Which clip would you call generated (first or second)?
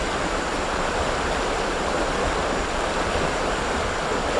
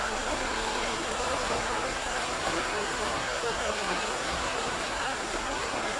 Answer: second